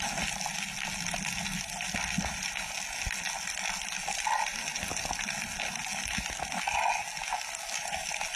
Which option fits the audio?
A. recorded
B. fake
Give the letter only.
A